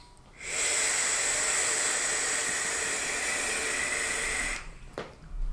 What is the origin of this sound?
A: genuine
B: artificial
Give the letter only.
A